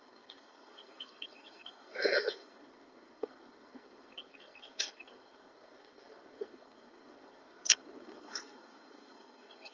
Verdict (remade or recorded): remade